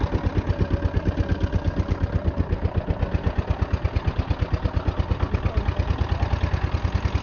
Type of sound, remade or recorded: recorded